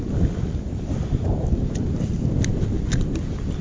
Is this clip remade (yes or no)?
no